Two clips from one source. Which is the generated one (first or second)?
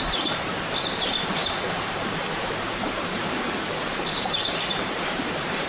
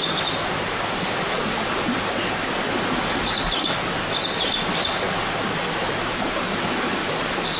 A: first